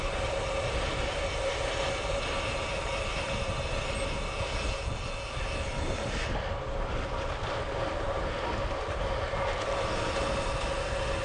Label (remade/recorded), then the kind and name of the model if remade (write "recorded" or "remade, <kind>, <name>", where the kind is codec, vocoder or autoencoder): recorded